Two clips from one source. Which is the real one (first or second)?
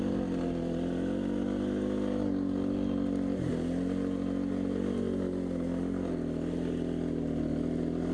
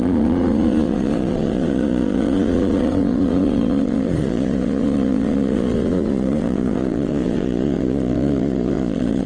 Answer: first